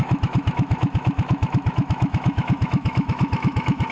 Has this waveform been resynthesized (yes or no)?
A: yes